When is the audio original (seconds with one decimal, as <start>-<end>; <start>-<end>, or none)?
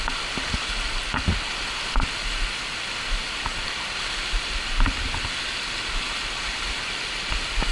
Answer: 0.0-7.7